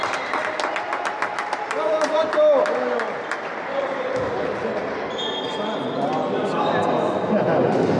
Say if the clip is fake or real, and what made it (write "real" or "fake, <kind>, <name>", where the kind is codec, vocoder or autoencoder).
real